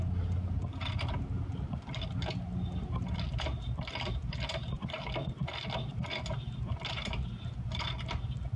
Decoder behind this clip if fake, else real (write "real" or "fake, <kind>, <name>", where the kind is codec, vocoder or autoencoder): real